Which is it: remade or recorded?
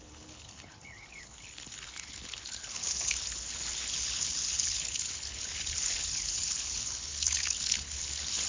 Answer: remade